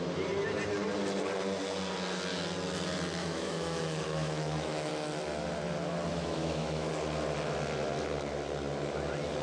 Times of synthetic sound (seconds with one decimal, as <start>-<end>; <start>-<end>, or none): 3.2-4.9; 6.1-6.9